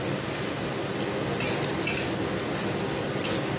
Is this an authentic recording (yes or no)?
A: yes